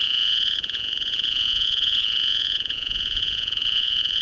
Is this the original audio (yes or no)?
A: no